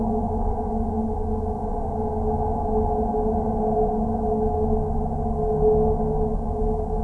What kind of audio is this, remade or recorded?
recorded